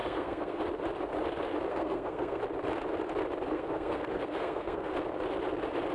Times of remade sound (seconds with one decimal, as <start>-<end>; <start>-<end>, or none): 0.0-0.6; 1.7-2.4; 3.5-4.9